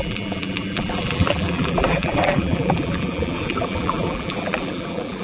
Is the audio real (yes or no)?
no